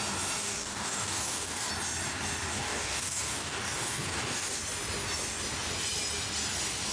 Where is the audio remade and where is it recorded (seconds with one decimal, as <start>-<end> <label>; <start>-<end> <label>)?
0.0-0.4 recorded; 0.4-1.7 remade; 1.7-2.5 recorded; 2.5-4.6 remade; 4.6-6.9 recorded